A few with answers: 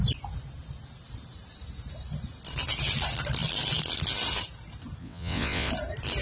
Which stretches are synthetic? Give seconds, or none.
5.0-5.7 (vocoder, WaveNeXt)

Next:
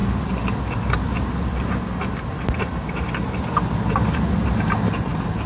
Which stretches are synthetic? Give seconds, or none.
none

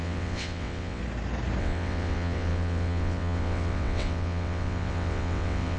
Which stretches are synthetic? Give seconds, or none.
0.0-1.0 (vocoder, WaveNeXt); 1.6-5.8

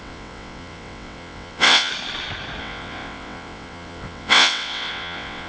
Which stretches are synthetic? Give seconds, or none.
0.0-1.9 (vocoder, WaveNeXt); 2.6-5.5

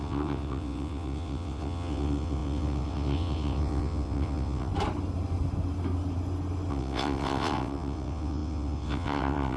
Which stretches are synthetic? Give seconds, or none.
0.0-4.7 (vocoder, WaveNeXt); 6.7-9.6

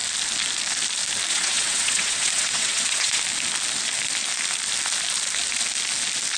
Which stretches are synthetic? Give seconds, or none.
1.3-3.2 (vocoder, WaveNeXt)

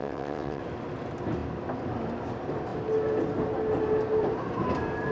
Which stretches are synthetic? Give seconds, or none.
0.0-0.6 (vocoder, WaveNeXt)